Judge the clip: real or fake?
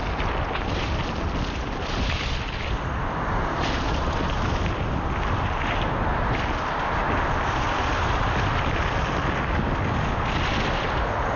real